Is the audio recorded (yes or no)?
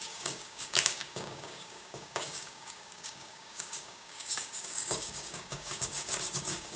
no